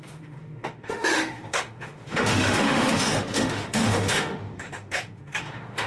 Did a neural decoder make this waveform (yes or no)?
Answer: yes